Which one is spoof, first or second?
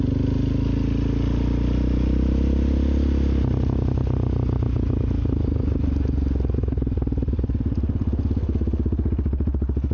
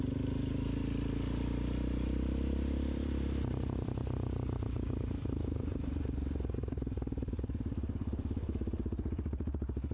second